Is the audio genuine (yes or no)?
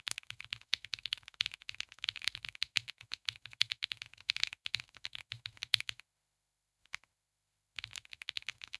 no